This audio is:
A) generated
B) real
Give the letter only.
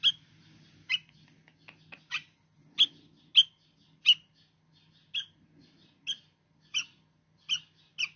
B